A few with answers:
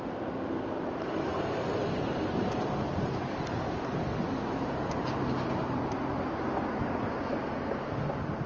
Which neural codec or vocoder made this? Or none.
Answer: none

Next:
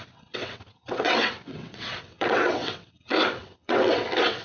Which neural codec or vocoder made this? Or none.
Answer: vocoder, WaveNeXt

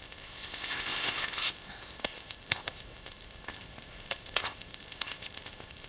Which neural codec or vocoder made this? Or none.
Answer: codec, ZipCodec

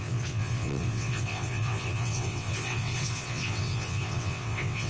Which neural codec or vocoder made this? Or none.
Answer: vocoder, WaveNeXt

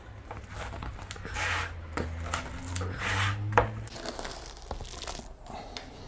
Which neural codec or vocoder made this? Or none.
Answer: none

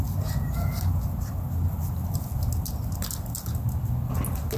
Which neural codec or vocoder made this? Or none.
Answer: none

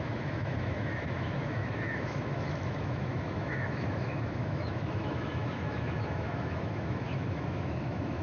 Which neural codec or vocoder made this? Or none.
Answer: autoencoder, DAC-VAE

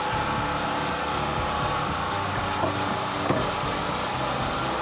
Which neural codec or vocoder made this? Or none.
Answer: none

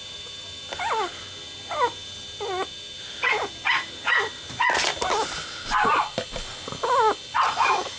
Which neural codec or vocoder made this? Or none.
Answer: none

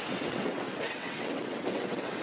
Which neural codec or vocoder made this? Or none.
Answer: vocoder, WaveNeXt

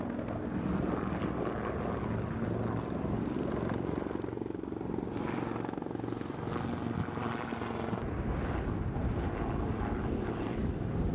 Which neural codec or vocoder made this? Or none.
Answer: none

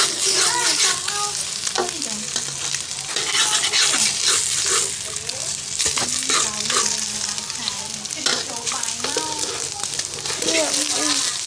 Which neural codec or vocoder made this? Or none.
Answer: none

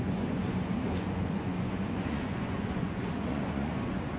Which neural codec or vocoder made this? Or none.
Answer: vocoder, Vocos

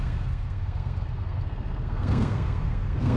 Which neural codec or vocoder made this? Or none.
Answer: codec, SNAC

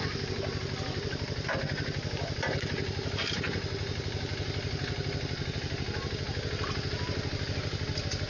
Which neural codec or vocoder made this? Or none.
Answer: none